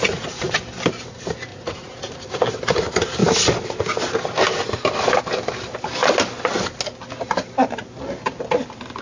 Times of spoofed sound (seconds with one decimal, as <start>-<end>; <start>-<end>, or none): 0.0-0.6; 1.5-2.4